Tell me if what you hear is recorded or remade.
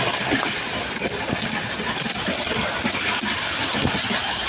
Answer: recorded